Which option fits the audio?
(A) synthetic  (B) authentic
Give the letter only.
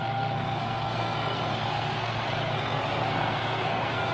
A